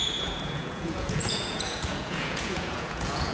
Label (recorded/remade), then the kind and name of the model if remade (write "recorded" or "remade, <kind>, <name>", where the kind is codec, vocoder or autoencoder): remade, vocoder, Vocos